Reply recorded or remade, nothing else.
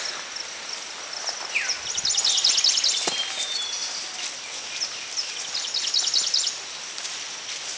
recorded